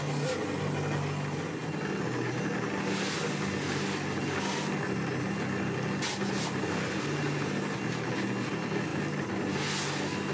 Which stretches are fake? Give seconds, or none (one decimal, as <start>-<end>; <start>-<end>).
none